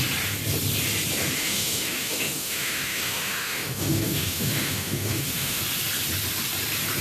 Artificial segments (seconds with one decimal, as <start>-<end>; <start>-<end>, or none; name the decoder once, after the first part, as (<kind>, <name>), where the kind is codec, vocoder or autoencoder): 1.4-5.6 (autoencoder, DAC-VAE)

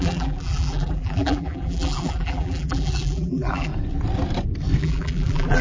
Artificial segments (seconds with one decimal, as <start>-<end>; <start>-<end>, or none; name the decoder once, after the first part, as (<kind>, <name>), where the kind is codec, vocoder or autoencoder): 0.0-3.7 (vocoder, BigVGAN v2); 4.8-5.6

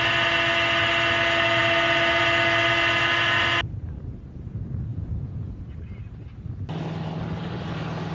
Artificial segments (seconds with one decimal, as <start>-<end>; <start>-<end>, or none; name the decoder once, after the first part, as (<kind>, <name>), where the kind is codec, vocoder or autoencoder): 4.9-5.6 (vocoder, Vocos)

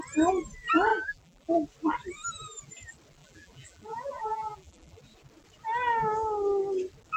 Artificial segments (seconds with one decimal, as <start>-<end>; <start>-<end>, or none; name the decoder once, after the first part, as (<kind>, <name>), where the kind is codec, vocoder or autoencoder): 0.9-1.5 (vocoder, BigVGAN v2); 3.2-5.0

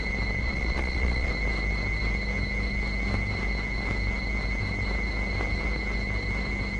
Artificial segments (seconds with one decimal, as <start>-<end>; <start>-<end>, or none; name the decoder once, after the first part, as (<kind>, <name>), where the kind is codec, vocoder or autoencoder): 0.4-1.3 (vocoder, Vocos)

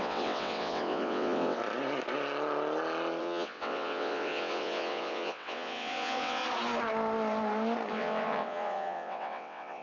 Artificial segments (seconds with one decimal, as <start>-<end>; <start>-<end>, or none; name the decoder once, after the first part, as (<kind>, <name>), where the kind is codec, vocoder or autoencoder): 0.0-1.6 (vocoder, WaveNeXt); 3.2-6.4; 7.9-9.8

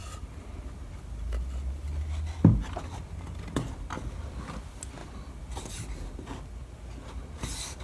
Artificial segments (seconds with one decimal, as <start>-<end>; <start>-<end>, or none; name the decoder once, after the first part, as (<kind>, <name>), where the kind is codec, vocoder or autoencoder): none